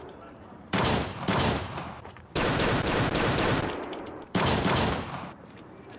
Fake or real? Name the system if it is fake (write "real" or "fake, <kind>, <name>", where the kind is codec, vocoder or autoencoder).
fake, vocoder, BigVGAN v2